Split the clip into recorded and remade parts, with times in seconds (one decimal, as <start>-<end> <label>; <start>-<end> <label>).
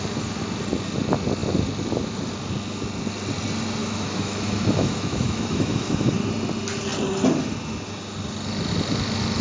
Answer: 0.0-3.8 recorded; 3.8-6.1 remade; 6.1-9.4 recorded